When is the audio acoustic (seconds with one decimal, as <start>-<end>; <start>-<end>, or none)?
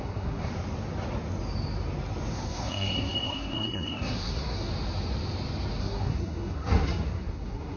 0.5-2.3; 4.7-5.8